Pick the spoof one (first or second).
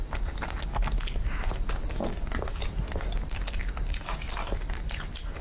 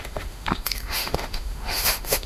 second